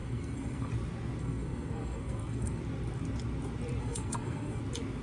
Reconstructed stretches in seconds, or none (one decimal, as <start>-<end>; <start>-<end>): 0.0-0.7; 1.2-2.6; 3.8-4.6